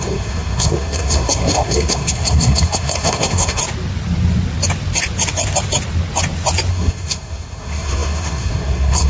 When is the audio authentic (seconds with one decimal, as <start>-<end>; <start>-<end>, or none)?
3.6-6.7